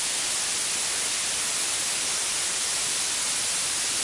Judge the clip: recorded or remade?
recorded